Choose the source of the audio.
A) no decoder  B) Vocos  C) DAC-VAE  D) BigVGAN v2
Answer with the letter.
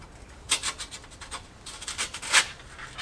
A